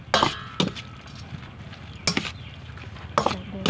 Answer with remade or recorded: recorded